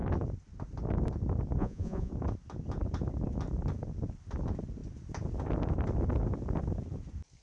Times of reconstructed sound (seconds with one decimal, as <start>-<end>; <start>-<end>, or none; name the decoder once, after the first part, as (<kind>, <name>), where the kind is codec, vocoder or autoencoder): 1.6-2.1 (vocoder, Vocos)